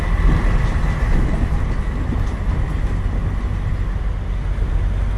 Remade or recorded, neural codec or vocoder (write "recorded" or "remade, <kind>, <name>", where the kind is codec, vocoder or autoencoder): recorded